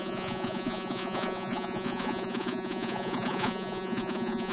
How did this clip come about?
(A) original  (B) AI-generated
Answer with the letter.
B